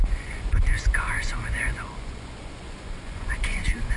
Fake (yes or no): yes